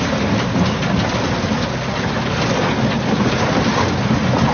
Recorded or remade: recorded